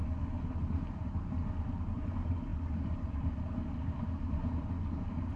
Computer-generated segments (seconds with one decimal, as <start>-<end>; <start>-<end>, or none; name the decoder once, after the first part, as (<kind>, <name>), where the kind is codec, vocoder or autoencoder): none